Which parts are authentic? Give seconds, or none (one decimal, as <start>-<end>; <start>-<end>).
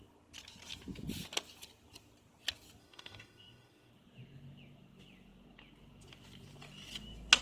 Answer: 0.0-2.8; 3.9-7.4